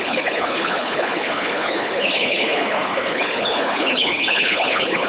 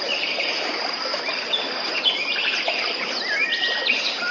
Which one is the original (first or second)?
second